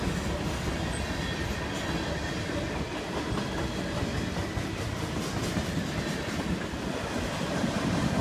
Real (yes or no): yes